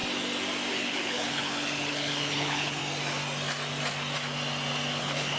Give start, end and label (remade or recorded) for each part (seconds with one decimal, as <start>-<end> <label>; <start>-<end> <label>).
0.0-0.7 recorded; 0.7-2.8 remade; 2.8-5.0 recorded; 5.0-5.4 remade